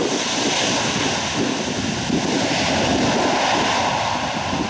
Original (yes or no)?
yes